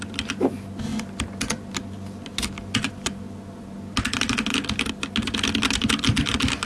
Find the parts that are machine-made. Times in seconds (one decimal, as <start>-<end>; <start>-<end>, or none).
none